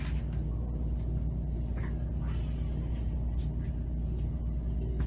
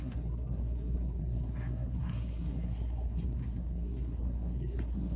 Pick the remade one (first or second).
second